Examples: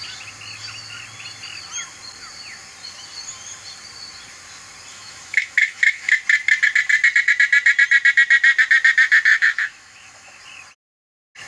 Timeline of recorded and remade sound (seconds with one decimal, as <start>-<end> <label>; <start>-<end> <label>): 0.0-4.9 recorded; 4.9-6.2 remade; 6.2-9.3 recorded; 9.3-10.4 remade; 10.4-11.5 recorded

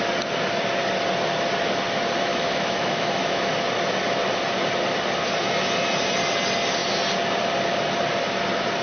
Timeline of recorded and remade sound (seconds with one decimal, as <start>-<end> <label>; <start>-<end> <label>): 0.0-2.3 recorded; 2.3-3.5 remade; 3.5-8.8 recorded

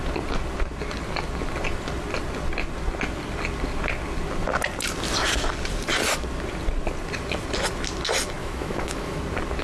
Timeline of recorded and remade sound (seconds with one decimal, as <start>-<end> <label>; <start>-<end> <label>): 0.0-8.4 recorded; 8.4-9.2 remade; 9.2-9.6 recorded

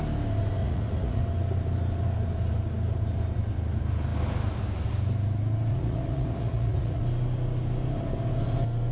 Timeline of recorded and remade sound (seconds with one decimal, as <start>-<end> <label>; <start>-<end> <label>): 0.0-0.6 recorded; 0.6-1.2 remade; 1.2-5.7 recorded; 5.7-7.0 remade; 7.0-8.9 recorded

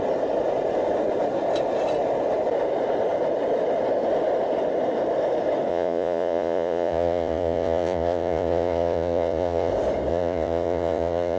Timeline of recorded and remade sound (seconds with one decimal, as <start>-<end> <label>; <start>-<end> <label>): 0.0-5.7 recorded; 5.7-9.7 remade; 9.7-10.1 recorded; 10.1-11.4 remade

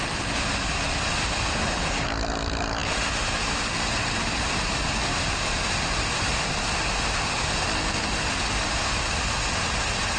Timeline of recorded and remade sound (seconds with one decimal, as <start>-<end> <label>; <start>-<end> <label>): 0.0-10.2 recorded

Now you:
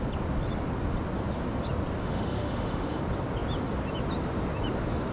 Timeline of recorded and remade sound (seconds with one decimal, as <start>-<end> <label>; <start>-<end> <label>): 0.0-2.0 recorded; 2.0-3.0 remade; 3.0-5.1 recorded

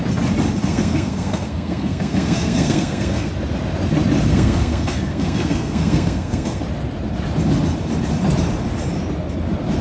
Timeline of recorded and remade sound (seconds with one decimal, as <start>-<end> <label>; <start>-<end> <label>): 0.0-0.6 recorded; 0.6-3.3 remade; 3.3-4.3 recorded; 4.3-6.6 remade; 6.6-9.8 recorded